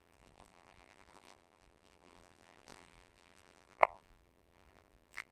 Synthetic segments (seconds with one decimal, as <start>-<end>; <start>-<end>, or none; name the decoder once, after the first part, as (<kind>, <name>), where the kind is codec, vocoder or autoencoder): 0.0-5.3 (vocoder, BigVGAN v2)